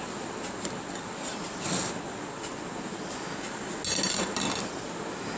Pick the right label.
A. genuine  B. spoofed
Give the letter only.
A